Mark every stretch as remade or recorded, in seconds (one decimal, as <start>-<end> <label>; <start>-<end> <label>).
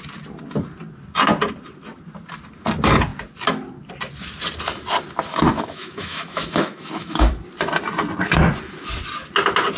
0.0-5.5 recorded; 5.5-7.3 remade; 7.3-9.8 recorded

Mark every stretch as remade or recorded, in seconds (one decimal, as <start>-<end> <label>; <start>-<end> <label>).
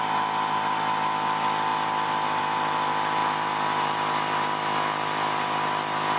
0.0-6.2 recorded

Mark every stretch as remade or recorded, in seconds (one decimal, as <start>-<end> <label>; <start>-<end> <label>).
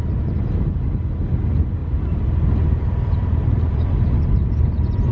0.0-1.8 recorded; 1.8-4.6 remade; 4.6-5.1 recorded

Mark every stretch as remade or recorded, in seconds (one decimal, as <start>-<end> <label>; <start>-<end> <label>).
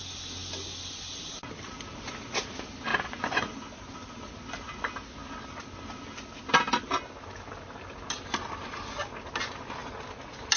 0.0-2.9 recorded; 2.9-3.5 remade; 3.5-10.6 recorded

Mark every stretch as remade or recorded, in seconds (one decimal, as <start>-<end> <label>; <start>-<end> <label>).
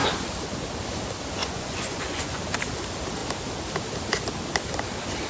0.0-1.4 recorded; 1.4-2.4 remade; 2.4-5.3 recorded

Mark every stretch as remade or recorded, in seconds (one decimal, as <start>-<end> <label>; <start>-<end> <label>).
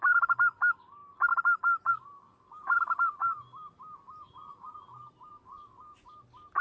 0.0-1.0 remade; 1.0-1.9 recorded; 1.9-3.2 remade; 3.2-5.3 recorded; 5.3-6.6 remade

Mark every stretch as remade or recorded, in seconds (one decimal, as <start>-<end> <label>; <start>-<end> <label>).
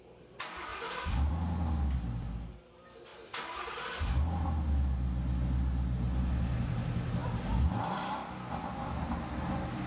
0.0-9.9 recorded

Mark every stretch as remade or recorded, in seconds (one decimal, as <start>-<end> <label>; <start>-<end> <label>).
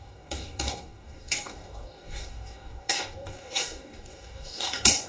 0.0-5.1 remade